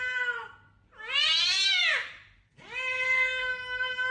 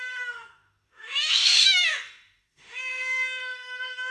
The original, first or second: first